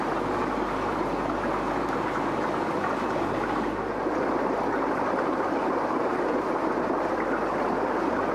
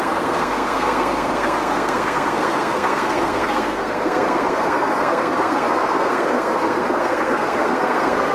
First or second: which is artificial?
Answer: second